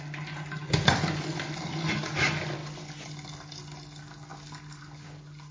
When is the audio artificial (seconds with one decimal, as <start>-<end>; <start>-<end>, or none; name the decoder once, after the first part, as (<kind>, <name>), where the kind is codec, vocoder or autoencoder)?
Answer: none